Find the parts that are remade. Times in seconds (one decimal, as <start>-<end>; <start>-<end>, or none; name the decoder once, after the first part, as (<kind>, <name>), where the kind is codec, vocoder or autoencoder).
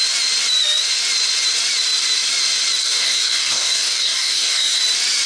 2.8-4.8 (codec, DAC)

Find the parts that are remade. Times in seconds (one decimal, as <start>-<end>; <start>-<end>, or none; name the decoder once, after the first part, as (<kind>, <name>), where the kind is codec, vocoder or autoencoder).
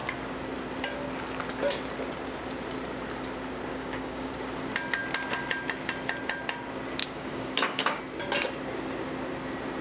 3.7-4.3 (codec, DAC); 7.0-8.0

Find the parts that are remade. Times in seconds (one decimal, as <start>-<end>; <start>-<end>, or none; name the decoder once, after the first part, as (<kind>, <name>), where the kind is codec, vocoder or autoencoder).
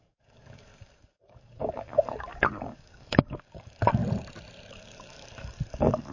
0.0-4.0 (codec, DAC); 4.7-6.1